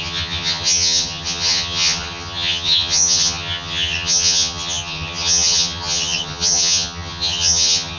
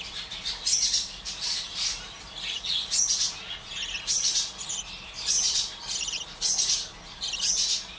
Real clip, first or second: second